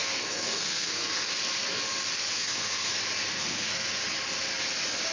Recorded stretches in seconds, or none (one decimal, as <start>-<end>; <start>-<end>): 1.3-2.3; 2.9-3.3; 3.9-5.1